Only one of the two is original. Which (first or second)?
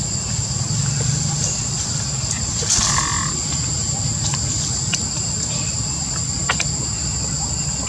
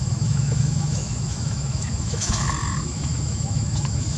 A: first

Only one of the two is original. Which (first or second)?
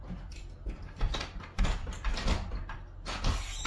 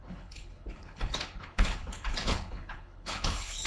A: first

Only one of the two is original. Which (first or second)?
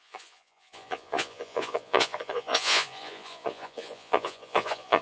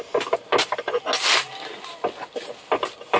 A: second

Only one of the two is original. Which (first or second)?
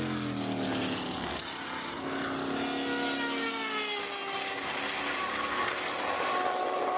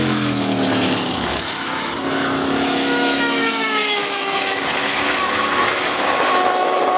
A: first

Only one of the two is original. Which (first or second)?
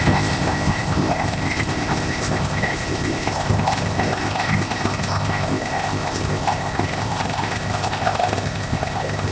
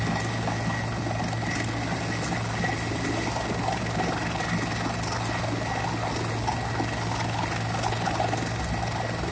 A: second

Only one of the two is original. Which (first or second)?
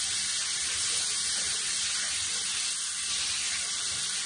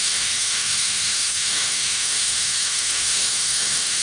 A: first